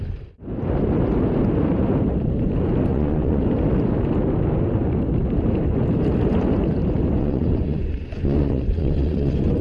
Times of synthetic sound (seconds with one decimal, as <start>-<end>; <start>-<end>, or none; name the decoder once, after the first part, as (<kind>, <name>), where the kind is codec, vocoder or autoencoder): 2.9-3.4 (vocoder, Vocos); 7.2-9.6